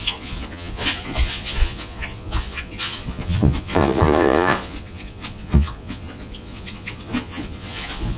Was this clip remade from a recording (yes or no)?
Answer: yes